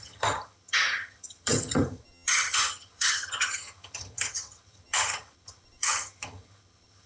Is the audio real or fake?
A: fake